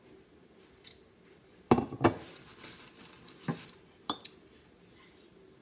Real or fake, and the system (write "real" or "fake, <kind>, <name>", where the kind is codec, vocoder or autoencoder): real